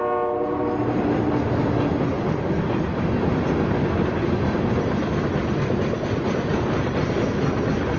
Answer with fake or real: real